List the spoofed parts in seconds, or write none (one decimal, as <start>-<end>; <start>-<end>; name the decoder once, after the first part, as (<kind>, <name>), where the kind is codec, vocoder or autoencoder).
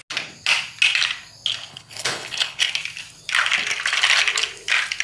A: 1.7-2.7 (codec, HILCodec)